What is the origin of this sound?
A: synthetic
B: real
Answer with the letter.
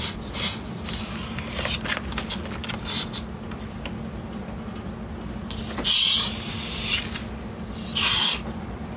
B